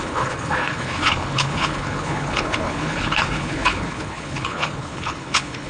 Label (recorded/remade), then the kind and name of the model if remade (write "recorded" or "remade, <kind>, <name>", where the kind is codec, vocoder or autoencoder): remade, codec, HILCodec